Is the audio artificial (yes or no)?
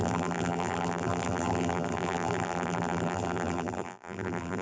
yes